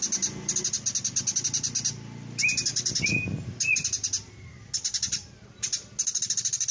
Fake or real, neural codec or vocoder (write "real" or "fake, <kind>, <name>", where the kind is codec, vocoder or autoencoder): real